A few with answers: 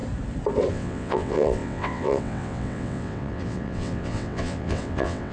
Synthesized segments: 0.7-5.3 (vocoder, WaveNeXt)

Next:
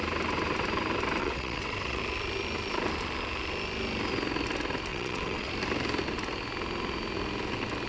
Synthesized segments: 1.2-2.0 (vocoder, WaveNeXt); 4.9-5.5

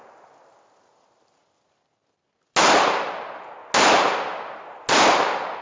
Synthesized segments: none

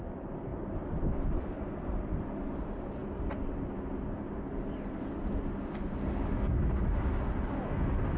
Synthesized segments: none

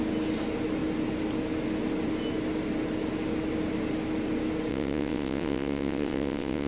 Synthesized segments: 4.7-6.7 (vocoder, WaveNeXt)

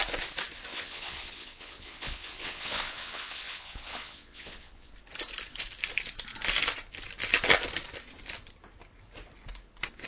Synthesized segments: 0.7-4.9 (vocoder, WaveNeXt)

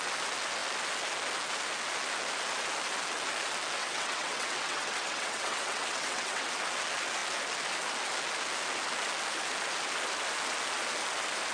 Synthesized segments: 3.8-6.5 (vocoder, WaveNeXt)

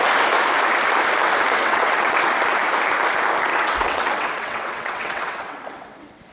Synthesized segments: 1.6-2.3 (vocoder, WaveNeXt); 3.5-6.3